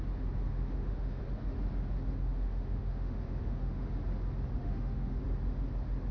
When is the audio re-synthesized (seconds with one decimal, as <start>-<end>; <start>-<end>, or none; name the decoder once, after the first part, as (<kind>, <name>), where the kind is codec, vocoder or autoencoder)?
0.5-1.2 (autoencoder, DAC-VAE); 2.2-3.9; 4.6-5.2